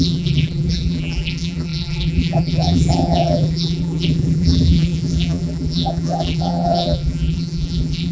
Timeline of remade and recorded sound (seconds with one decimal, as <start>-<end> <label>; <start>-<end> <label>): 0.0-8.1 remade